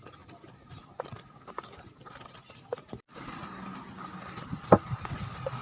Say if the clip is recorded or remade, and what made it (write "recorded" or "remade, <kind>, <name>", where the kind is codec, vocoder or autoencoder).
recorded